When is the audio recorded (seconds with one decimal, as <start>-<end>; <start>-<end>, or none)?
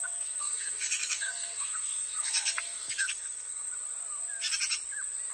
3.7-5.3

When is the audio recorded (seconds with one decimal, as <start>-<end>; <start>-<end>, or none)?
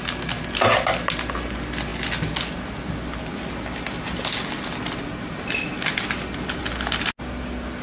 0.0-7.8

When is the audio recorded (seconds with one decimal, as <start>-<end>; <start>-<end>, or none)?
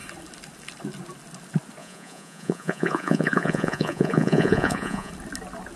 0.0-1.8; 5.1-5.8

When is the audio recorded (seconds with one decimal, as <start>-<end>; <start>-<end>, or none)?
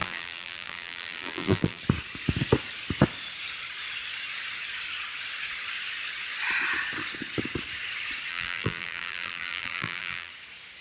1.8-8.3; 10.3-10.8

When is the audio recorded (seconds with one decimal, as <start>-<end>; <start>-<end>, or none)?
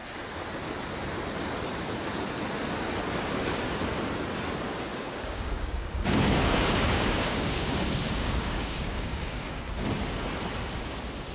0.0-4.9; 9.7-11.3